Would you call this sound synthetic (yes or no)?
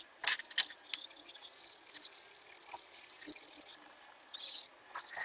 no